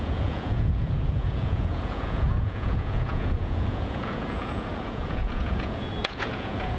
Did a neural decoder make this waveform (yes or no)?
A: yes